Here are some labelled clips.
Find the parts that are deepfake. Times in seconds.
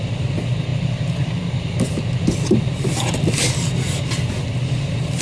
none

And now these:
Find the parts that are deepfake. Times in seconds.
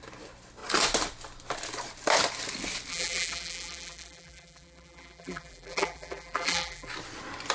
2.9-6.9 (vocoder, BigVGAN v2)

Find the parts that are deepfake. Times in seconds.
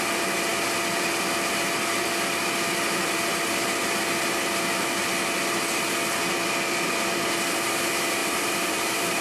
8.2-9.2 (vocoder, BigVGAN v2)